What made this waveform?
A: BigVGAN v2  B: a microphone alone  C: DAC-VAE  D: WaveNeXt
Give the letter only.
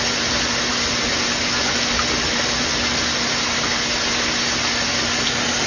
B